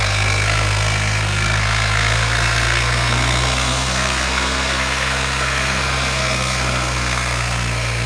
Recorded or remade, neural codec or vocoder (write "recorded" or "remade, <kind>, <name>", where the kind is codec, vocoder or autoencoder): remade, codec, SNAC